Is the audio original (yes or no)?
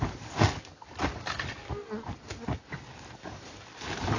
yes